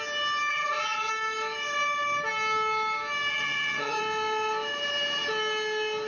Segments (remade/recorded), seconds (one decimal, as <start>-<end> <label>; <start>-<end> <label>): 0.0-0.5 recorded; 0.5-1.1 remade; 1.1-3.3 recorded; 3.3-4.0 remade; 4.0-6.1 recorded